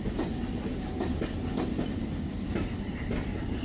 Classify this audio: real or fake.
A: real